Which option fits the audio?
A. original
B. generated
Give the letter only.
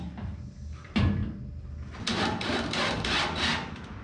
A